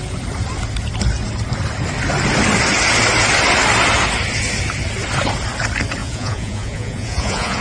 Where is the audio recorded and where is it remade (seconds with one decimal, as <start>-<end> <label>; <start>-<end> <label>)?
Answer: 0.0-6.0 recorded; 6.0-7.6 remade

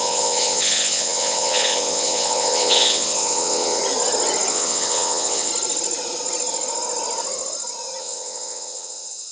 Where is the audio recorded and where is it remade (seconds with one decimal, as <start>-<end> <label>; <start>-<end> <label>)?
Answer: 0.0-3.8 remade; 3.8-4.5 recorded; 4.5-5.5 remade; 5.5-8.0 recorded; 8.0-9.3 remade

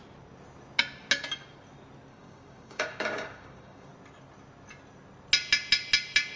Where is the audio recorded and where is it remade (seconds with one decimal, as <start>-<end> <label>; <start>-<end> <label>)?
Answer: 0.0-2.1 recorded; 2.1-3.9 remade; 3.9-6.4 recorded

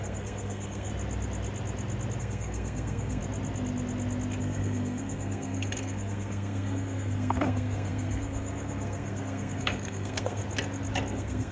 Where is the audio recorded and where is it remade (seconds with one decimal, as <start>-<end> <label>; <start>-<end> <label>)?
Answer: 0.0-0.9 remade; 0.9-2.2 recorded; 2.2-3.2 remade; 3.2-4.4 recorded; 4.4-10.4 remade; 10.4-11.1 recorded; 11.1-11.5 remade